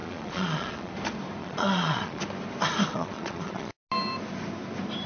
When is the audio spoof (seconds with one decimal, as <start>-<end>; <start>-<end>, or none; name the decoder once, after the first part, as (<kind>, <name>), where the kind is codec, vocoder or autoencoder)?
0.0-0.9 (vocoder, Vocos); 1.4-2.2; 2.9-3.7